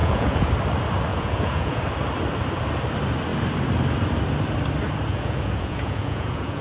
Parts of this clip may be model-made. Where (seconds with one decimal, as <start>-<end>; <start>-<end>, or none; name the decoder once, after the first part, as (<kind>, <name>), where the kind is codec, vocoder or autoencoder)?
0.0-0.5 (vocoder, Vocos); 1.1-1.8; 5.1-6.6